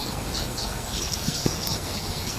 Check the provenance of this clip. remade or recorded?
remade